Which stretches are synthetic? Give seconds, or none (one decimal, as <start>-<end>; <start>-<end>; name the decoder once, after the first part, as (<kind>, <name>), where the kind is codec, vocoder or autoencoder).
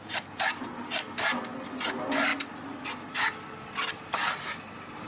none